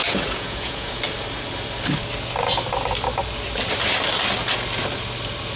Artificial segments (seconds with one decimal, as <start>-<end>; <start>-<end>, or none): 0.0-1.0